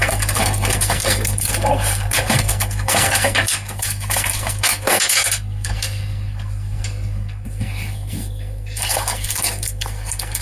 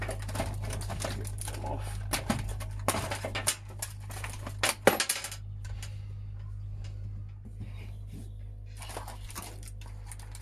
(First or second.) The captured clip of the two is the second